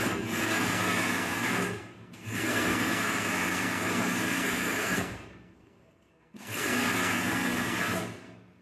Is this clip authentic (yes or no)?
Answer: no